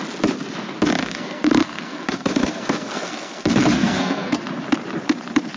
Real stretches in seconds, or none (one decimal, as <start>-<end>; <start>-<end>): 0.0-1.0; 4.4-5.6